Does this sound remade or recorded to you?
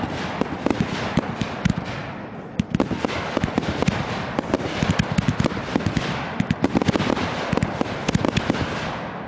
recorded